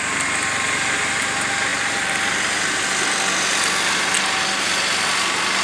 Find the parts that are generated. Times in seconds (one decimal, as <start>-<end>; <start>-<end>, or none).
none